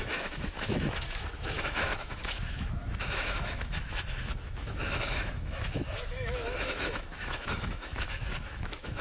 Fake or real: fake